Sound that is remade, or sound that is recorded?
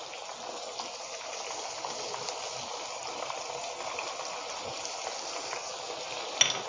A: recorded